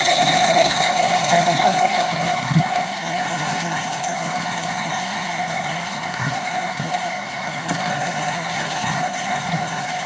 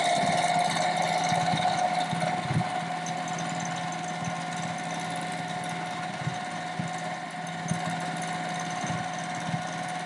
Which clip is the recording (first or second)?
second